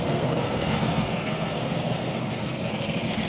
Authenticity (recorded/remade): remade